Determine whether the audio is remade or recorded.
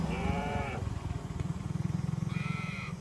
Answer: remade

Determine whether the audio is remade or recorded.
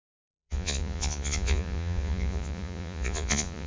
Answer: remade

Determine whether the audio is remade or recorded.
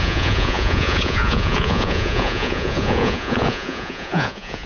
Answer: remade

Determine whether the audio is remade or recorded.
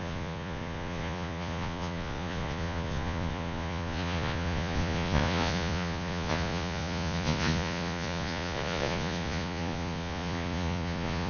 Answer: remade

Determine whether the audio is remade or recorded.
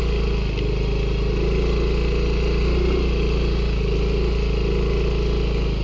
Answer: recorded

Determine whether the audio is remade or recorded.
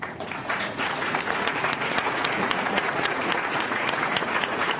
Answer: remade